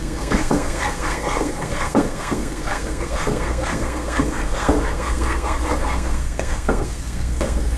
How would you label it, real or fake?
fake